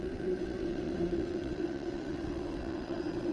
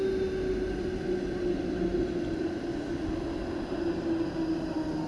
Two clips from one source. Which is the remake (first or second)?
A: first